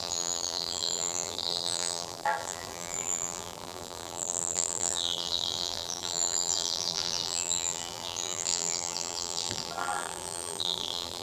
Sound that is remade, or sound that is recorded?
remade